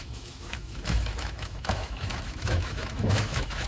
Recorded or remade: remade